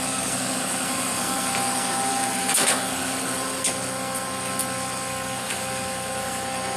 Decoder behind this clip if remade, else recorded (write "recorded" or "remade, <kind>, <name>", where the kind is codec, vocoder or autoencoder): remade, codec, SNAC